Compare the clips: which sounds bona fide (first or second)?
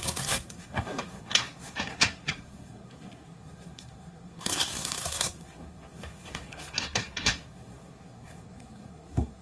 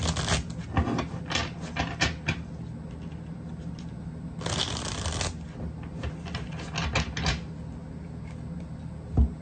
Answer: second